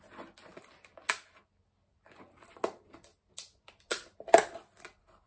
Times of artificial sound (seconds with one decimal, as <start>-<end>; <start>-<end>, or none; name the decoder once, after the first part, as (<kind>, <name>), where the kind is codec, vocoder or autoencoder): none

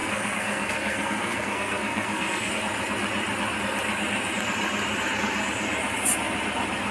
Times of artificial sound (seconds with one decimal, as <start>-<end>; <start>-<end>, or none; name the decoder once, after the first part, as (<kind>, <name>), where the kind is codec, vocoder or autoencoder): 0.0-2.5 (codec, SNAC)

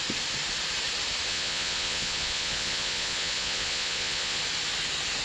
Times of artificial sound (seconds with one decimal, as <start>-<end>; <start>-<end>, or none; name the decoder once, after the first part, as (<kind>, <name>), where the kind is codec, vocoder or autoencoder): 1.3-4.4 (vocoder, Vocos)

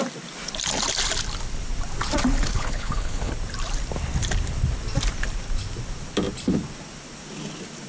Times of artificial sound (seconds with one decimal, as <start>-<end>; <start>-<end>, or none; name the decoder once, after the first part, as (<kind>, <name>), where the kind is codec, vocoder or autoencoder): 2.5-3.3 (codec, HILCodec)

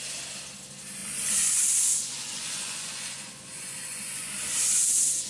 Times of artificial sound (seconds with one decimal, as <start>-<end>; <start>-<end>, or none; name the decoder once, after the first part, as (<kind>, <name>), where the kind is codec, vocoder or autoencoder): 1.0-1.6 (vocoder, Vocos); 2.2-4.3